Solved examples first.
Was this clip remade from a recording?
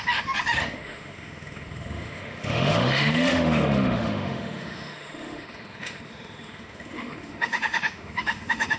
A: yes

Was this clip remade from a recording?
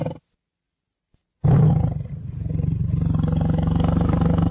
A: no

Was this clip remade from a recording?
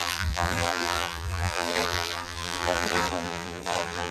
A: yes